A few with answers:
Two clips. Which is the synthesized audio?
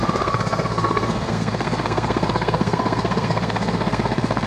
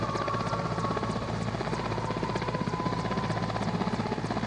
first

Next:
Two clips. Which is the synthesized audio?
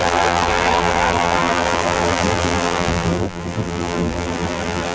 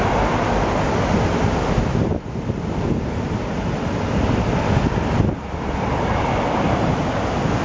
first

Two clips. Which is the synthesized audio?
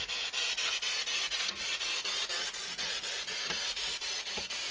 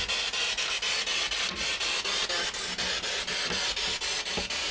first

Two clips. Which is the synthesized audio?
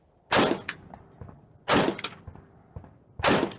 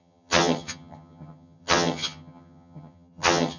second